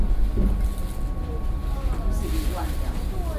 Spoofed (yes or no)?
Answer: no